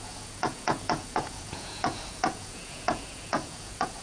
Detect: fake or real fake